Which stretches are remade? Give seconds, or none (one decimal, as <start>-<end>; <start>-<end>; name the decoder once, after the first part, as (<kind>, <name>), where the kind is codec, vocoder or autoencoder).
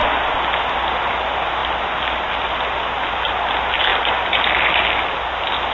0.0-0.6 (vocoder, BigVGAN v2); 3.9-5.1